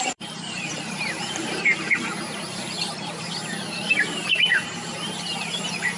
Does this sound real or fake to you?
fake